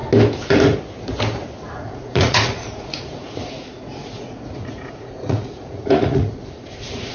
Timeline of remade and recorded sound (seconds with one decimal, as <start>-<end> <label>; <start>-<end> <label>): 0.0-1.7 recorded; 1.7-7.1 remade